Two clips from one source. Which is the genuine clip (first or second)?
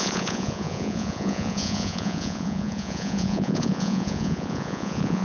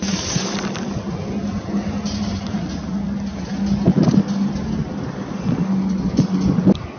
second